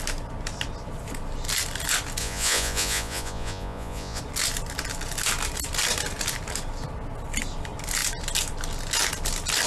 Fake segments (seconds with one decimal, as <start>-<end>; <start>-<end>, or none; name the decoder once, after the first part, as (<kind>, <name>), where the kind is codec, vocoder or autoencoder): 2.2-4.2 (vocoder, Vocos)